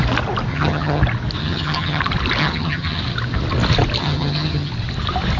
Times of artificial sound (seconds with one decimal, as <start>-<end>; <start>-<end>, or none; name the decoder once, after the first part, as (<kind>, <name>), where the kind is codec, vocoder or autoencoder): 0.5-1.0 (vocoder, HiFi-GAN); 1.4-2.0; 2.4-3.0; 4.0-4.7